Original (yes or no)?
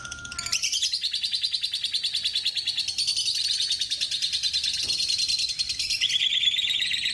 yes